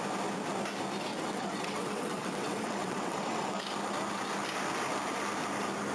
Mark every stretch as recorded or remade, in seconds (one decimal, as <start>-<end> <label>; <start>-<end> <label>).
0.0-1.1 recorded; 1.1-3.6 remade; 3.6-5.9 recorded